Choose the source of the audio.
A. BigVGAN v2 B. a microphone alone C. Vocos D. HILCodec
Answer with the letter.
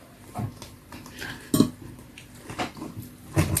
B